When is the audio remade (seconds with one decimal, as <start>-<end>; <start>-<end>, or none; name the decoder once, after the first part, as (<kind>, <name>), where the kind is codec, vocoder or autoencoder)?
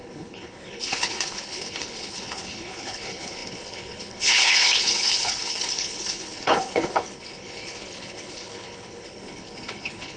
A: 0.0-10.2 (codec, HILCodec)